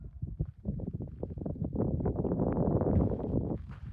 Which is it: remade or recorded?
remade